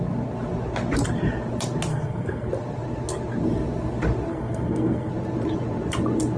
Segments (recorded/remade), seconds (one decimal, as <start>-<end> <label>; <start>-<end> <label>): 0.0-1.9 recorded; 1.9-2.5 remade; 2.5-4.3 recorded; 4.3-5.1 remade; 5.1-6.4 recorded